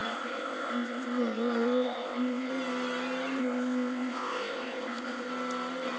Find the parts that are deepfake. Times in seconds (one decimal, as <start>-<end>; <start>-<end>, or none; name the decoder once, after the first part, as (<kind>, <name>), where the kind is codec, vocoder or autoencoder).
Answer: 0.0-2.5 (codec, ZipCodec); 3.4-5.3